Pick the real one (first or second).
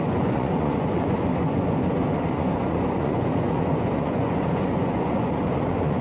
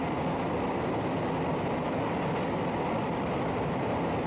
second